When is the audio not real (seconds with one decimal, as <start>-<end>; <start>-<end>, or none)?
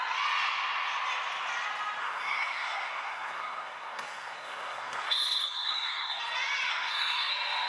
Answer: 2.0-6.2; 6.7-7.3